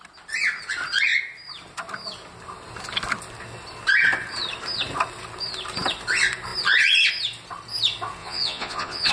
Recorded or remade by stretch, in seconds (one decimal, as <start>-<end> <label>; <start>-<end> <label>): 0.0-8.2 recorded; 8.2-9.1 remade